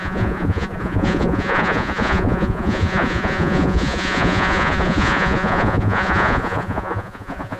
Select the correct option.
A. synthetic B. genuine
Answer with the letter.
A